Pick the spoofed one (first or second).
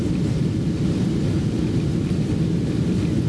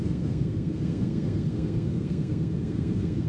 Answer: second